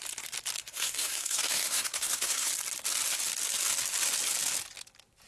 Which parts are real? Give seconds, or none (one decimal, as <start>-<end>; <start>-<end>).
0.0-0.6; 2.5-5.3